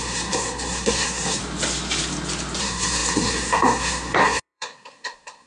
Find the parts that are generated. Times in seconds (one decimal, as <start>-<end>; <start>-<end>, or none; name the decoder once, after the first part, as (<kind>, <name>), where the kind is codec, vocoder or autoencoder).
0.0-1.4 (codec, SNAC); 2.6-5.5